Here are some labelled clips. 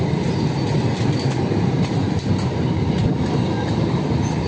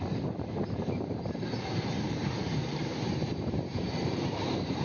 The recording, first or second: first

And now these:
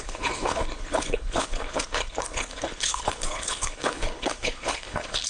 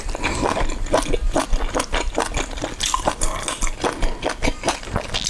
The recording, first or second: second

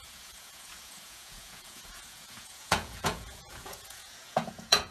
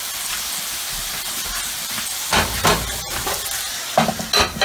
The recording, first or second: second